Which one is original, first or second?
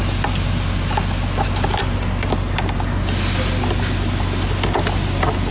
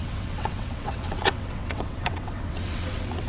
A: first